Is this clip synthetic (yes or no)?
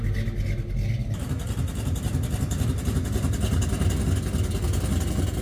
no